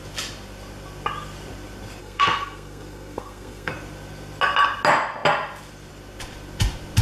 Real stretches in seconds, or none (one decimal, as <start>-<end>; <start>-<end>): 0.0-2.0; 3.7-7.0